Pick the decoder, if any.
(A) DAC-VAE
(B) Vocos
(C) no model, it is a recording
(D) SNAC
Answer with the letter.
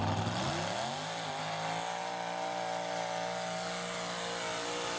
C